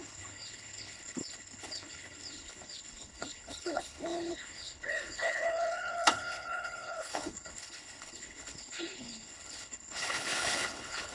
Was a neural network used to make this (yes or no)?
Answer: yes